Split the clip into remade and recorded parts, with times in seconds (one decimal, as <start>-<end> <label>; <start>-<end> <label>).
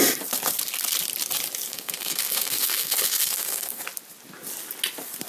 0.0-1.7 recorded; 1.7-3.8 remade; 3.8-5.3 recorded